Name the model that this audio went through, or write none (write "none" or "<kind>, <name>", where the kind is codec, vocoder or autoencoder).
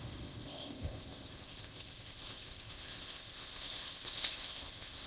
codec, ZipCodec